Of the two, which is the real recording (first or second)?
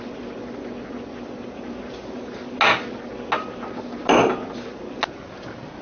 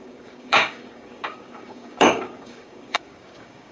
first